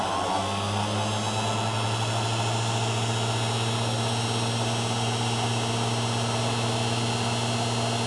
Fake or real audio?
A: real